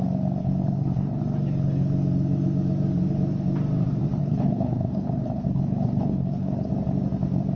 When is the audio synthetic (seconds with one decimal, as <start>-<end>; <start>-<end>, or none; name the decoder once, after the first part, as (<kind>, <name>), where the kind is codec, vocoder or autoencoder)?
0.4-1.2 (codec, HILCodec); 4.2-6.7